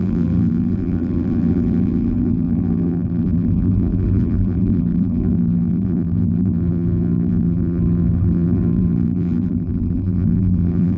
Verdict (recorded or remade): remade